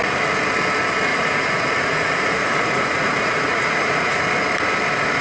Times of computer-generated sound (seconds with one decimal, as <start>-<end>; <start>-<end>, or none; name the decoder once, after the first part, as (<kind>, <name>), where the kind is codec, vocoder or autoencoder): 1.1-4.2 (vocoder, Vocos)